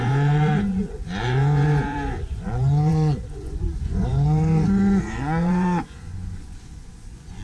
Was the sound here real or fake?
fake